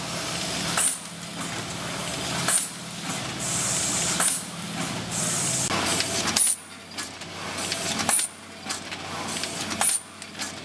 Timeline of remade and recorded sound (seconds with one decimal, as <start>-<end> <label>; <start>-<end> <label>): 0.0-10.6 recorded